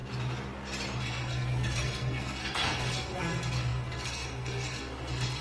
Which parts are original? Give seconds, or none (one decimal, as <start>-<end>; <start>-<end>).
0.0-1.0

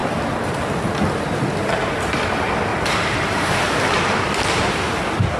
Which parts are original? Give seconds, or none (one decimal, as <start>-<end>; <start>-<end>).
0.0-2.7; 4.9-5.4